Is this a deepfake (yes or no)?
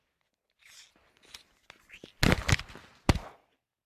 no